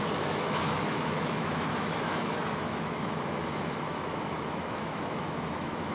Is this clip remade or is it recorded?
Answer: remade